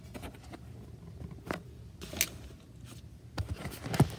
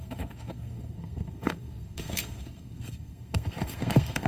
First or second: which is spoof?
second